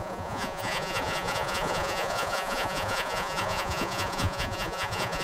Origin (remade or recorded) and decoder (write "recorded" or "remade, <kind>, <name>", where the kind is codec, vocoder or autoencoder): remade, vocoder, Vocos